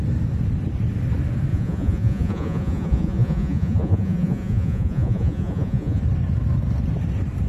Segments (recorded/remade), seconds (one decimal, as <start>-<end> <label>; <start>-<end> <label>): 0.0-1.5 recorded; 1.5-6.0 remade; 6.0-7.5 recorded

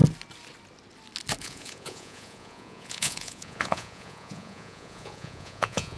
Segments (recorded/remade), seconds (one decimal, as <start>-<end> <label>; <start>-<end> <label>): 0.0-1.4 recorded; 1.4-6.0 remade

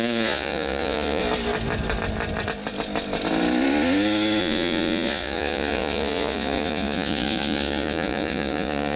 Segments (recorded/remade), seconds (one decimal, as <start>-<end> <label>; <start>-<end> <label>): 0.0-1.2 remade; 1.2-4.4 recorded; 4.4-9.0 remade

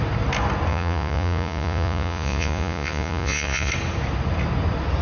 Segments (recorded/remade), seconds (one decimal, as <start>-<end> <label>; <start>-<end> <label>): 0.0-0.7 recorded; 0.7-3.7 remade; 3.7-5.0 recorded